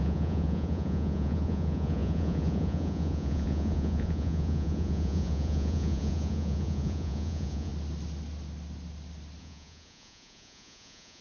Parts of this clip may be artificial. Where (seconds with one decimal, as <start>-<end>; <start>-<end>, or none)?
0.0-7.7; 9.4-11.2

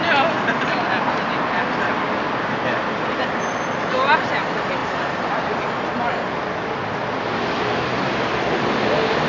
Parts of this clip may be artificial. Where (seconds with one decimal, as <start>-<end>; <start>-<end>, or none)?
none

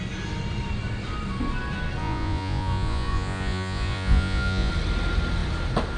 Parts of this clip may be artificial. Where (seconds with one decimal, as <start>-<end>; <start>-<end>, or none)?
2.0-4.7

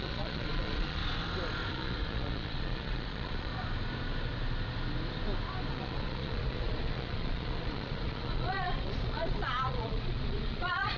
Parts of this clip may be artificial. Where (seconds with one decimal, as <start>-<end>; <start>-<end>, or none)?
0.0-1.0; 1.7-3.5; 5.7-11.0

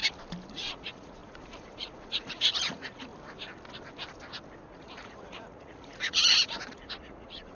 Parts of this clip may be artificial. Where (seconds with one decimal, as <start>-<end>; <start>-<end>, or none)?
0.5-3.1; 4.7-7.5

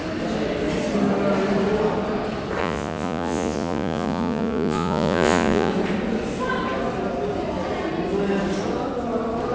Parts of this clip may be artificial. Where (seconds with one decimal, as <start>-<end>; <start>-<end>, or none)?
2.6-5.7

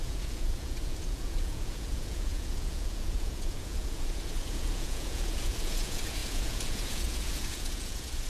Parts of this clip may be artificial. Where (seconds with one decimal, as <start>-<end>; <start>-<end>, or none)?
0.0-8.3